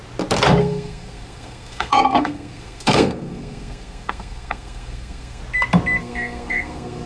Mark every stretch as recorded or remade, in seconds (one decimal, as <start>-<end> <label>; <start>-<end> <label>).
0.0-0.6 recorded; 0.6-5.4 remade; 5.4-6.0 recorded; 6.0-7.1 remade

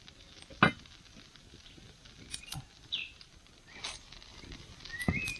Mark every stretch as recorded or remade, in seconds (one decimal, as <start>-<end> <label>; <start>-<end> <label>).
0.0-5.4 recorded

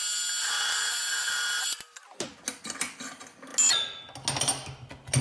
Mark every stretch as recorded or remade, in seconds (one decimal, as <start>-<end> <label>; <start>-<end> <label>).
0.0-5.2 recorded

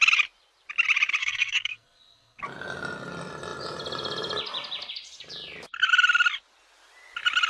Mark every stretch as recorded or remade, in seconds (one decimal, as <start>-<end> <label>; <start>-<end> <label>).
0.0-1.2 recorded; 1.2-2.4 remade; 2.4-7.5 recorded